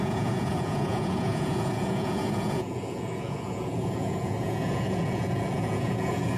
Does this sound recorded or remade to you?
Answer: remade